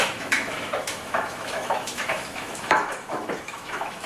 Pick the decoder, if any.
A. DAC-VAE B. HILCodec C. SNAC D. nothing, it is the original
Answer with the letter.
A